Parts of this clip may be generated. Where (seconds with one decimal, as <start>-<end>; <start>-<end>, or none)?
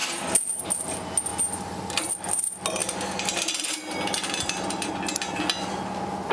2.8-4.9